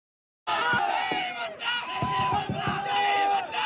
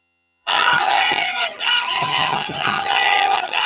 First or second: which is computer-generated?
second